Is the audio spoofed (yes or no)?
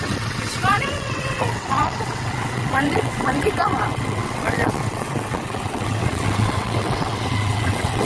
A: yes